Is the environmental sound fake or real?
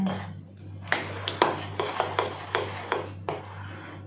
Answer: real